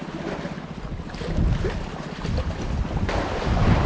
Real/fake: real